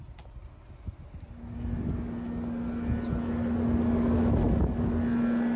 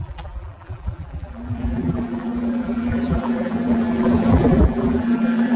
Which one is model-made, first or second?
second